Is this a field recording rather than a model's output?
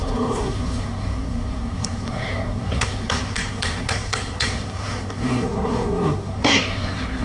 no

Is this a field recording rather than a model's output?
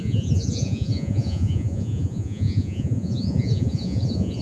no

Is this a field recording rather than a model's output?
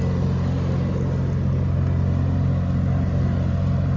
yes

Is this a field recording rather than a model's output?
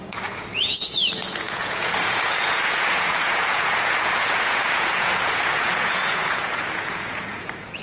no